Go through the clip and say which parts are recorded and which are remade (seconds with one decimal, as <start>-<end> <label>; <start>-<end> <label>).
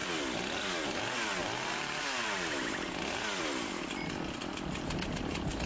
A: 0.0-5.7 recorded